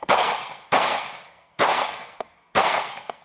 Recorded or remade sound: remade